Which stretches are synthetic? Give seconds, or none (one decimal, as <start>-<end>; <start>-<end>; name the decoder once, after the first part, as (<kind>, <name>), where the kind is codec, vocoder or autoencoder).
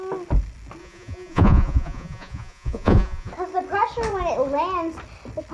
0.8-3.3 (vocoder, Vocos)